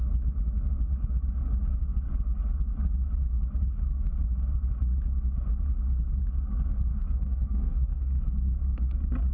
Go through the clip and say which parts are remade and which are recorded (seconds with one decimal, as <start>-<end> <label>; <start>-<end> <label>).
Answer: 0.0-6.9 recorded; 6.9-8.2 remade; 8.2-9.3 recorded